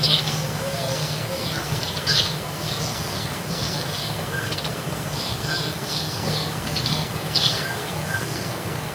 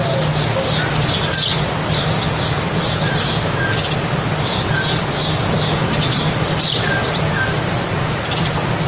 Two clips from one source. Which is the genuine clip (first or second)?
second